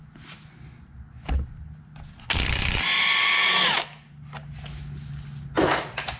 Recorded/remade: recorded